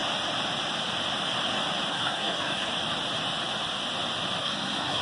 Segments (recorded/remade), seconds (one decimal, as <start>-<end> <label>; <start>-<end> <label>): 0.0-1.9 recorded; 1.9-2.7 remade; 2.7-4.4 recorded; 4.4-5.0 remade

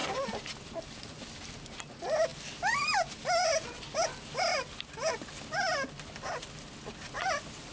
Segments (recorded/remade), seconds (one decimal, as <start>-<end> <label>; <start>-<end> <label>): 0.0-7.7 recorded

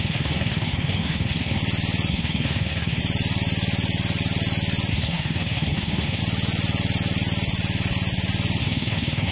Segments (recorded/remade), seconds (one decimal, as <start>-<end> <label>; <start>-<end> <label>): 0.0-1.6 remade; 1.6-2.1 recorded; 2.1-3.0 remade; 3.0-4.9 recorded; 4.9-6.2 remade; 6.2-8.6 recorded; 8.6-9.3 remade

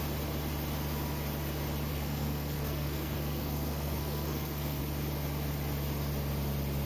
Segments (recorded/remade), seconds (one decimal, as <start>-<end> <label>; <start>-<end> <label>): 0.0-1.9 recorded; 1.9-4.8 remade; 4.8-6.9 recorded

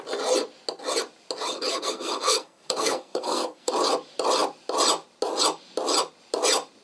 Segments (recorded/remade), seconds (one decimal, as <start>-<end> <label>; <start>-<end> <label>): 0.0-1.7 recorded; 1.7-3.7 remade; 3.7-6.8 recorded

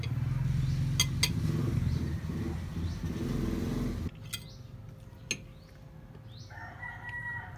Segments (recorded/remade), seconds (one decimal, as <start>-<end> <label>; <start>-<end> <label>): 0.0-7.6 recorded

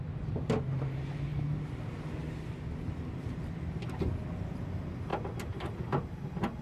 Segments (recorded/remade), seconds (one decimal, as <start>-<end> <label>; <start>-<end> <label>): 0.0-6.6 recorded

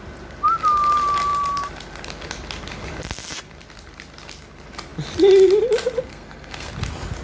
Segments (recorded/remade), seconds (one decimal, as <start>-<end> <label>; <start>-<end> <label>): 0.0-6.1 recorded; 6.1-6.7 remade; 6.7-7.2 recorded